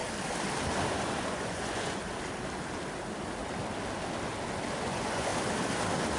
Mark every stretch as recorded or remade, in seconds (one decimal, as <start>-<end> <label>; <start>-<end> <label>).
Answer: 0.0-1.2 recorded; 1.2-2.0 remade; 2.0-4.8 recorded; 4.8-5.3 remade; 5.3-6.2 recorded